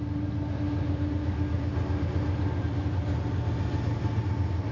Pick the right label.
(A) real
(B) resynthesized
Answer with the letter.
A